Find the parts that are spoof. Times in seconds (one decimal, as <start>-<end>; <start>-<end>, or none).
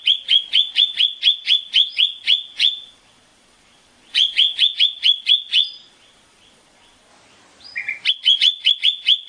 0.0-7.1; 8.1-9.3